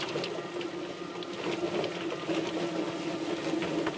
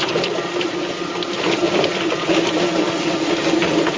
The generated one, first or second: second